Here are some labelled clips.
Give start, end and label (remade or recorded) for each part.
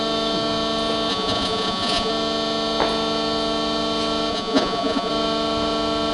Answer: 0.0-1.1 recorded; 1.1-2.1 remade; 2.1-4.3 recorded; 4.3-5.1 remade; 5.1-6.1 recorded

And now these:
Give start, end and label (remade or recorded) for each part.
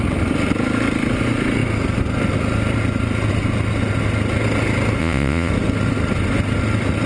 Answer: 0.0-5.0 recorded; 5.0-5.5 remade; 5.5-7.1 recorded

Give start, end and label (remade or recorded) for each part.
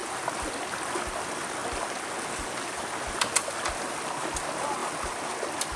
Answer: 0.0-5.8 recorded